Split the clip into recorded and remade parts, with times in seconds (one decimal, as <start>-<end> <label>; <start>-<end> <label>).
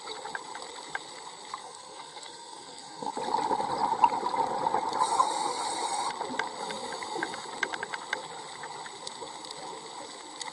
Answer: 0.0-1.6 recorded; 1.6-3.1 remade; 3.1-10.5 recorded